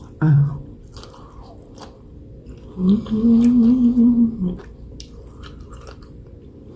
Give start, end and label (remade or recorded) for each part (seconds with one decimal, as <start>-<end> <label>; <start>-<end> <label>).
0.0-6.8 recorded